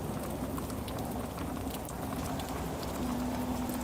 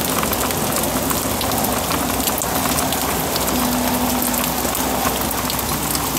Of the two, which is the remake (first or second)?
first